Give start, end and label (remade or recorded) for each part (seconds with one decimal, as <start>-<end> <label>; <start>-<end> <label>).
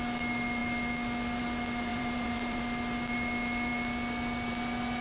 0.0-1.9 recorded; 1.9-2.6 remade; 2.6-5.0 recorded